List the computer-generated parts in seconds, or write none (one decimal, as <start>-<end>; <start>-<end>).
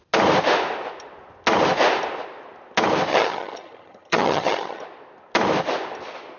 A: 3.1-4.8